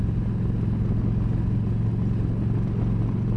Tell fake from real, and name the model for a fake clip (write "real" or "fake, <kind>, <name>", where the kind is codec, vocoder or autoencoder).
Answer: real